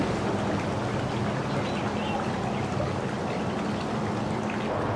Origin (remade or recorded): recorded